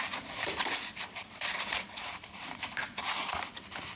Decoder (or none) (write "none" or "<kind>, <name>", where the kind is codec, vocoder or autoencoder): vocoder, BigVGAN v2